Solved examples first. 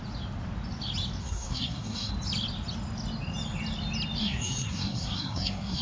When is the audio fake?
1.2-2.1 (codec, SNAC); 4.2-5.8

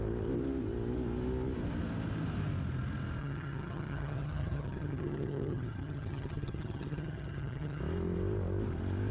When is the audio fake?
3.2-7.8 (vocoder, HiFi-GAN)

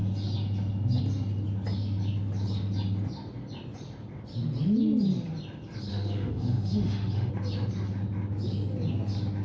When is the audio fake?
5.9-7.3 (autoencoder, DAC-VAE)

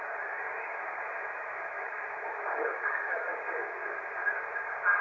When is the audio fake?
0.0-3.8 (autoencoder, DAC-VAE); 4.6-5.0

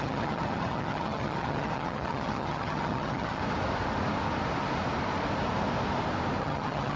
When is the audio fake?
0.0-3.4 (vocoder, HiFi-GAN); 6.4-7.0

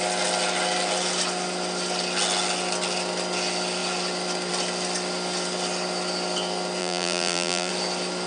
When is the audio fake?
6.8-7.7 (vocoder, BigVGAN v2)

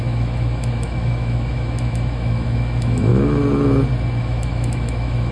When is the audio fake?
0.0-3.1 (autoencoder, DAC-VAE); 4.2-5.3

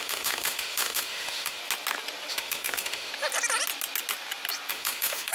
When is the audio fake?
0.0-1.6 (autoencoder, DAC-VAE); 2.3-3.1; 4.7-5.3